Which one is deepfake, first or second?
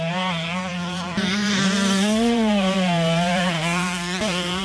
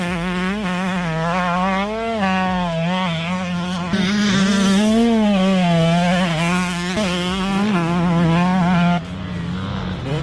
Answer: first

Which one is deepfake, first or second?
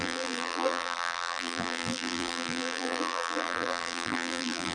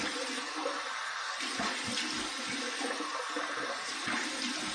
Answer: first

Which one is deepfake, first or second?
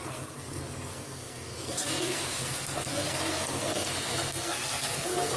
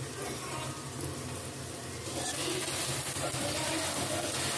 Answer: first